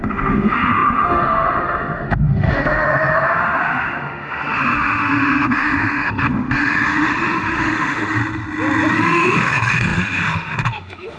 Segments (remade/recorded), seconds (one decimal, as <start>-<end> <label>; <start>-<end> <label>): 0.0-8.2 remade; 8.2-8.9 recorded; 8.9-11.2 remade